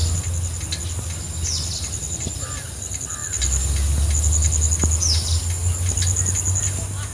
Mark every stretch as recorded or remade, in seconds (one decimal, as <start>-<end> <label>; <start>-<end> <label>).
0.0-7.1 recorded